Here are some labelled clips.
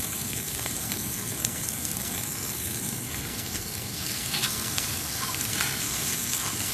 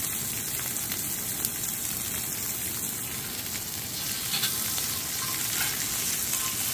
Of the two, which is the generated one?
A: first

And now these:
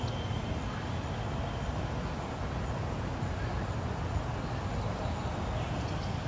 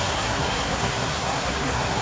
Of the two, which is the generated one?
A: second